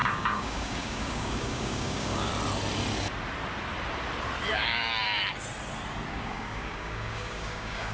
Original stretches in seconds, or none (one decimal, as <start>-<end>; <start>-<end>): 2.3-4.5; 4.9-6.1